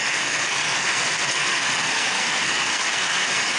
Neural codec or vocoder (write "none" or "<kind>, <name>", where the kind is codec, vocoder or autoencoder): codec, SNAC